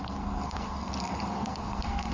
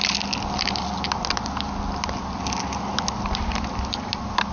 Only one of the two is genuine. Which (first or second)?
second